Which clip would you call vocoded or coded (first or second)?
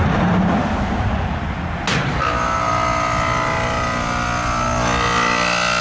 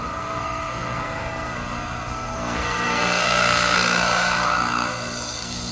second